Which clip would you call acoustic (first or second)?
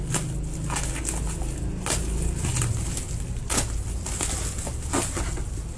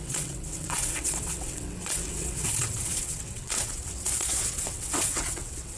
first